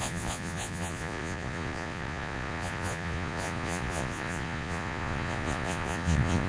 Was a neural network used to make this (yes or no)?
yes